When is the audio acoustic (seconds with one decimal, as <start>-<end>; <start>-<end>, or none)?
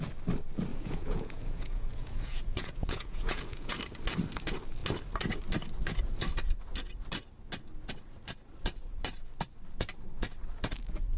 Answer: 0.0-0.7; 3.8-11.2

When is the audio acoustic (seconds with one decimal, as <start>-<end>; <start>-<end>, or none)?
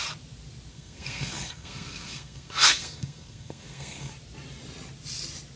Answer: 0.0-0.7; 4.1-5.6